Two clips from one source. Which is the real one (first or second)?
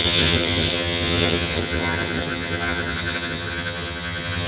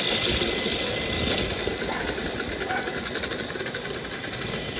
second